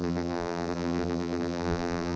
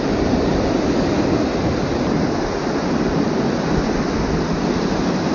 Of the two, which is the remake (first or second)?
first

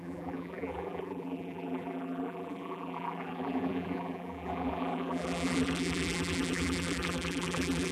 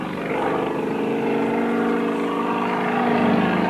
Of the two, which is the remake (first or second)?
first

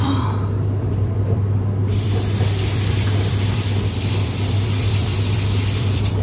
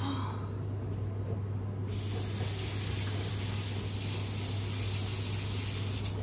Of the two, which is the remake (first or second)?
first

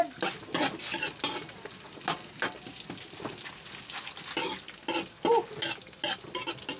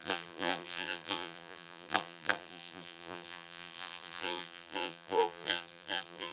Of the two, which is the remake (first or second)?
second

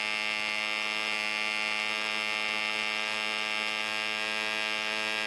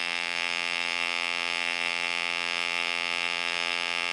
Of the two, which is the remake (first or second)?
second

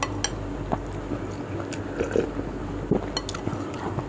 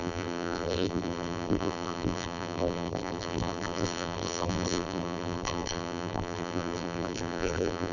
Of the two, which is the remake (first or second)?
second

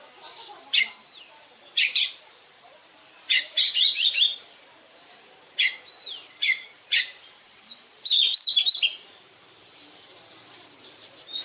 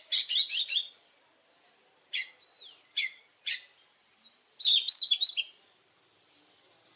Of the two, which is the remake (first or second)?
first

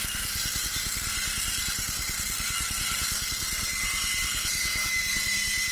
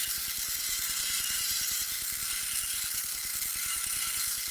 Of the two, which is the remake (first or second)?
second